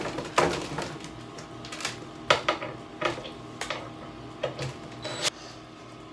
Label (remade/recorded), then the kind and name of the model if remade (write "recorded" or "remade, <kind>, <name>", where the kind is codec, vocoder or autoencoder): recorded